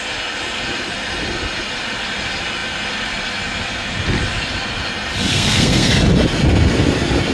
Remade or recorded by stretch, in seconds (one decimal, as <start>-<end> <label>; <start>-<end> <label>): 0.0-5.3 recorded; 5.3-5.9 remade; 5.9-7.3 recorded